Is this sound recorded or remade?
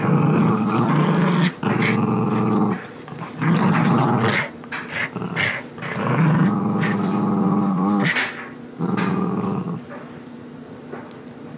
recorded